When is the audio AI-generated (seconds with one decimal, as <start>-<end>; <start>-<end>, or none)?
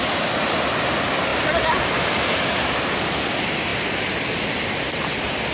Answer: none